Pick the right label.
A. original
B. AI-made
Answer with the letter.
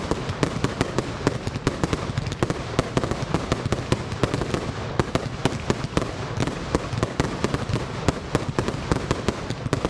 A